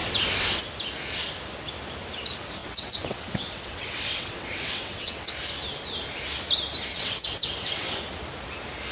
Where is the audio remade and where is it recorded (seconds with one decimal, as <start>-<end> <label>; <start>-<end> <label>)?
0.0-0.6 remade; 0.6-2.6 recorded; 2.6-5.3 remade; 5.3-6.9 recorded; 6.9-8.0 remade; 8.0-8.9 recorded